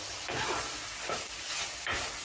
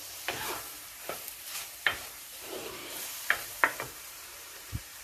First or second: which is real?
first